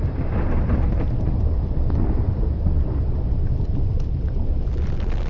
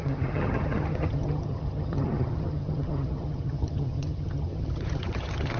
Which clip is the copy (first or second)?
second